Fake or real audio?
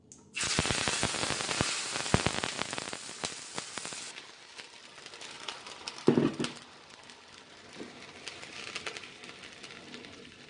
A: real